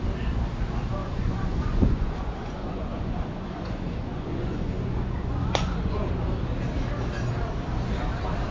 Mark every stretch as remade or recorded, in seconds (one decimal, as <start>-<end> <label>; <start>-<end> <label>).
0.0-1.0 recorded; 1.0-6.1 remade; 6.1-8.5 recorded